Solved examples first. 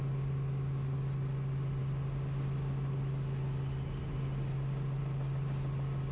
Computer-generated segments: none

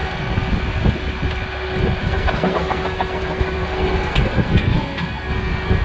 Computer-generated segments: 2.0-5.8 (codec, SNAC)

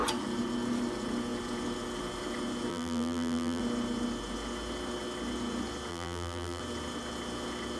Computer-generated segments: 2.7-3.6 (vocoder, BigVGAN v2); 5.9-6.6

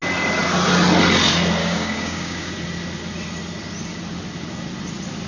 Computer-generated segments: 1.6-2.5 (codec, DAC)

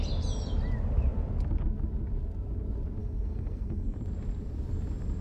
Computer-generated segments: 3.0-4.0 (codec, SNAC)